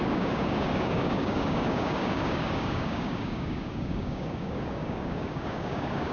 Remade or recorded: remade